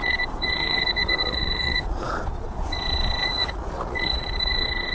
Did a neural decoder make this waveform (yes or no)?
yes